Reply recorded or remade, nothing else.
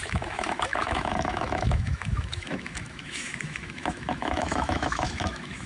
remade